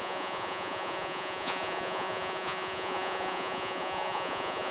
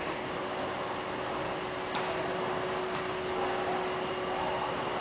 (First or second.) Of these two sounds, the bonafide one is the second